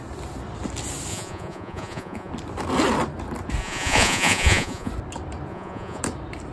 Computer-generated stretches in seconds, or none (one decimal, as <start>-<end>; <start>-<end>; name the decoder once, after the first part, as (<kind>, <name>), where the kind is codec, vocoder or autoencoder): 1.1-2.3 (vocoder, Vocos); 3.6-4.9; 5.5-6.0